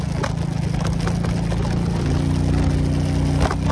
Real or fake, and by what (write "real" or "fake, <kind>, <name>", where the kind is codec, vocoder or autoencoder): real